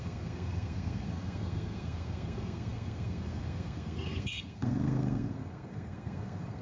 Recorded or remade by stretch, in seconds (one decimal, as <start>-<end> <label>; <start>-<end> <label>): 0.0-6.6 remade